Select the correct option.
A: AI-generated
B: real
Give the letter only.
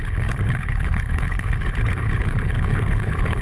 A